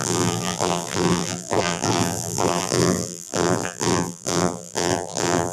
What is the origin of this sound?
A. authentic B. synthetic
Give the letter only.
B